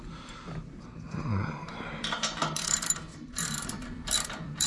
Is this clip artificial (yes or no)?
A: yes